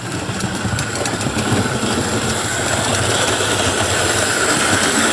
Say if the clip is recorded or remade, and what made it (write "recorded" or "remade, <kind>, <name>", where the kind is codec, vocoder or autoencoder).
remade, vocoder, BigVGAN v2